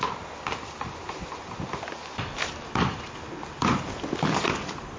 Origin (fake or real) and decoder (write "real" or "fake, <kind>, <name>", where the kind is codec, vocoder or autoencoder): real